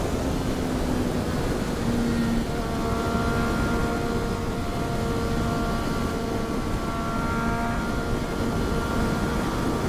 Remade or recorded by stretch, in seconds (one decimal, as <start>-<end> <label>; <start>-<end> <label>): 0.0-9.9 recorded